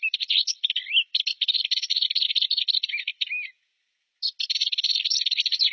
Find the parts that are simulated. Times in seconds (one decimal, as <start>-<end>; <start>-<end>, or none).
none